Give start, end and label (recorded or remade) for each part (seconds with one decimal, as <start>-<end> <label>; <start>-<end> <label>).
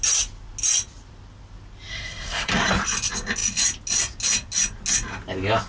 0.0-1.9 recorded; 1.9-2.5 remade; 2.5-5.7 recorded